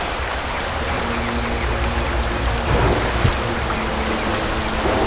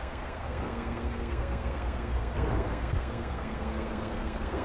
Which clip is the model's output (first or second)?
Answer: second